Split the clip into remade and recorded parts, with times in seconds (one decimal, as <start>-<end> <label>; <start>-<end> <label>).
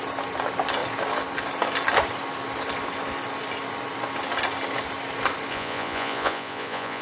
0.0-5.5 recorded; 5.5-7.0 remade